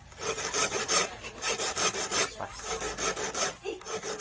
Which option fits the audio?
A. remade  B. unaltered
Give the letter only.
B